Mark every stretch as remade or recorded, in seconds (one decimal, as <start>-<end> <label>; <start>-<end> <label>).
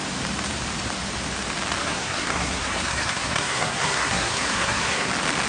0.0-1.8 recorded; 1.8-5.1 remade; 5.1-5.5 recorded